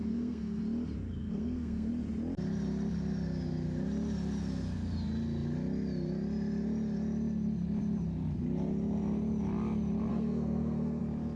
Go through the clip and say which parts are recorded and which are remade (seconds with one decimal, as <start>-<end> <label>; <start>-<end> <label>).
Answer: 0.0-0.6 remade; 0.6-1.2 recorded; 1.2-1.9 remade; 1.9-10.1 recorded; 10.1-11.0 remade; 11.0-11.4 recorded

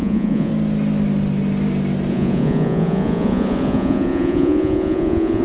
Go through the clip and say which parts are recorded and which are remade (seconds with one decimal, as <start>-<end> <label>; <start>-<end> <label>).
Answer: 0.0-0.5 remade; 0.5-2.1 recorded; 2.1-5.4 remade